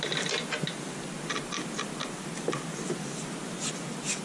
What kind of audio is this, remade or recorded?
recorded